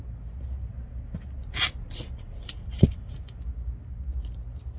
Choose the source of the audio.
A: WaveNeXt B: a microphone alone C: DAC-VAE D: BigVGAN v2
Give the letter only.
B